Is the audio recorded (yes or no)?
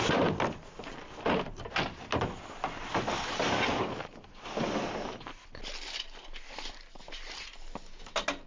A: yes